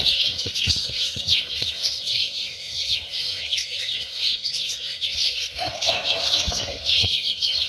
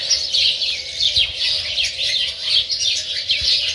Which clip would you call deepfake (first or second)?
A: first